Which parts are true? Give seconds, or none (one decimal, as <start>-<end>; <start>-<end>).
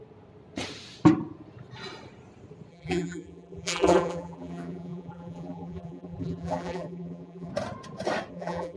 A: 0.0-2.7; 7.5-8.3